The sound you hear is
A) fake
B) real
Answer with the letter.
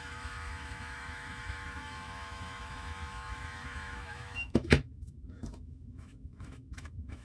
A